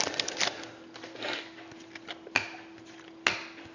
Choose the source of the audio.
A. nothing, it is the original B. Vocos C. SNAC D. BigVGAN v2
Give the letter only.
A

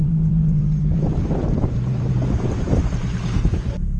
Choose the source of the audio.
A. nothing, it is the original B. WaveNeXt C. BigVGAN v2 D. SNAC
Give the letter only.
C